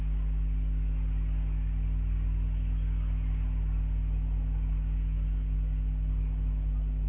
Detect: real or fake real